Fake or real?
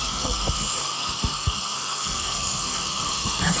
fake